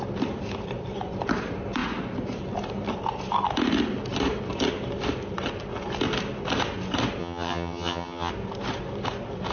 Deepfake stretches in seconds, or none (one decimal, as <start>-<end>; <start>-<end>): 7.2-8.3